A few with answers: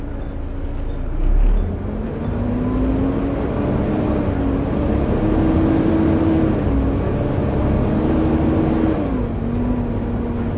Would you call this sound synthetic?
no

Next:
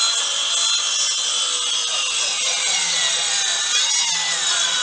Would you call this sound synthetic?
no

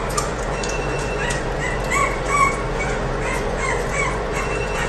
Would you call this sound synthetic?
yes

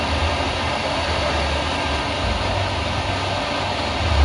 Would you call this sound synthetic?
no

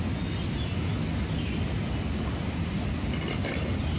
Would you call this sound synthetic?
no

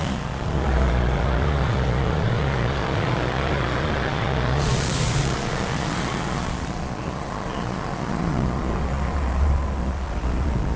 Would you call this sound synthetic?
yes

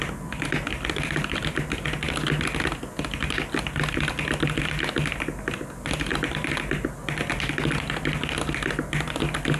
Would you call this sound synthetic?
no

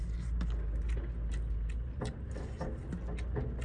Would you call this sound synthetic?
no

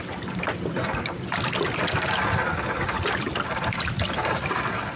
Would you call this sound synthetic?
no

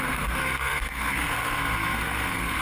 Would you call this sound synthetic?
yes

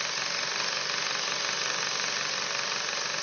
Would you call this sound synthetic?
no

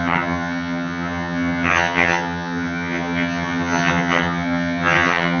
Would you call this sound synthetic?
yes